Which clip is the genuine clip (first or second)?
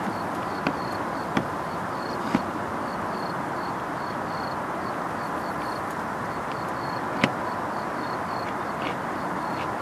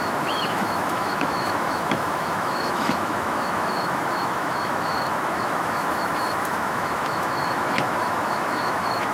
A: first